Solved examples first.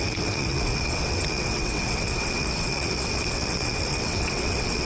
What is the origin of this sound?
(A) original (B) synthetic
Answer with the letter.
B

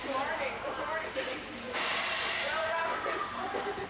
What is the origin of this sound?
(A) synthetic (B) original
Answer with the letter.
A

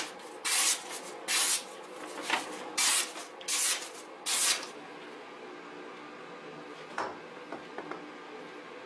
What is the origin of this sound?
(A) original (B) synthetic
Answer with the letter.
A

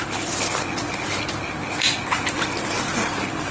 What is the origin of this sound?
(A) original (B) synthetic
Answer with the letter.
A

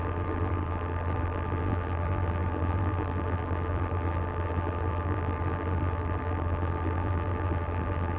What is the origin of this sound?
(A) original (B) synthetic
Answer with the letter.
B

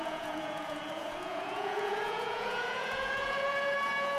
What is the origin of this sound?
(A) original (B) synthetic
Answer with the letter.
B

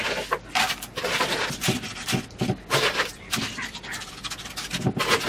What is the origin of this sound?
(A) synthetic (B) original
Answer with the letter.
B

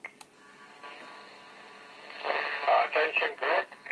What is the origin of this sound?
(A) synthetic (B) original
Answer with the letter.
B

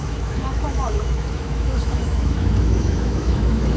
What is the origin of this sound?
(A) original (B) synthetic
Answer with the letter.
B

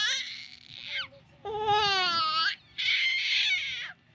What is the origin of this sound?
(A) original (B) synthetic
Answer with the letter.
A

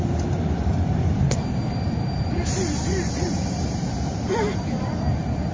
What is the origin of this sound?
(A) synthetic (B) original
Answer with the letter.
A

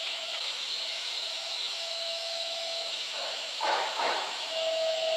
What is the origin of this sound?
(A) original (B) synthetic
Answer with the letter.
B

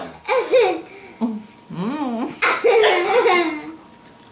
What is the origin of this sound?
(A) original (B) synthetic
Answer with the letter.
A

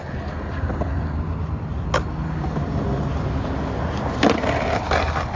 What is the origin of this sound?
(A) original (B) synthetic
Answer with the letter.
A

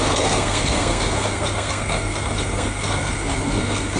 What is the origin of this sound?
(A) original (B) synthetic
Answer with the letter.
B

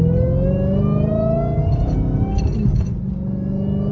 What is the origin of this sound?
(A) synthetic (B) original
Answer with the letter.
B